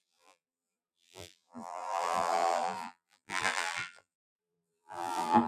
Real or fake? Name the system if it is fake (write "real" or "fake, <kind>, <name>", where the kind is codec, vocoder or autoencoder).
fake, vocoder, BigVGAN v2